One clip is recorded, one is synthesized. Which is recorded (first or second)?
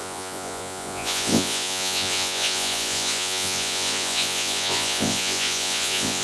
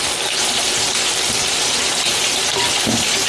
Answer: second